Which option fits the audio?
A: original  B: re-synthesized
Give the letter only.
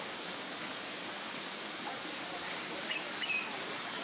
B